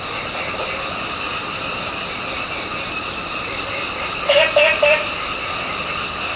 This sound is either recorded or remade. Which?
recorded